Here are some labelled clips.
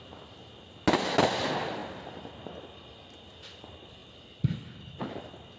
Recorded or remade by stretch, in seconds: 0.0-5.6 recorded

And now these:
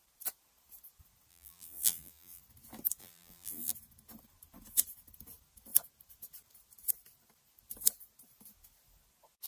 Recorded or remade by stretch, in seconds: 0.0-1.3 recorded; 1.3-2.4 remade; 2.4-3.0 recorded; 3.0-3.7 remade; 3.7-9.5 recorded

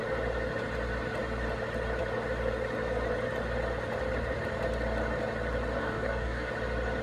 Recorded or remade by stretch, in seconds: 0.0-5.8 recorded; 5.8-6.5 remade; 6.5-7.0 recorded